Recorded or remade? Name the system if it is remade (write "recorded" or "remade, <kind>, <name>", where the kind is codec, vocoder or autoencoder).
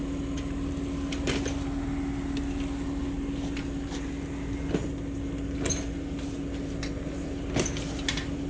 recorded